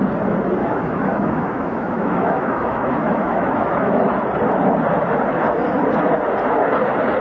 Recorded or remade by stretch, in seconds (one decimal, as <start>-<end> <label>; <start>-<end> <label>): 0.0-0.6 recorded; 0.6-4.1 remade; 4.1-7.2 recorded